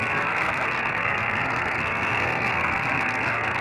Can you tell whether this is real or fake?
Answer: fake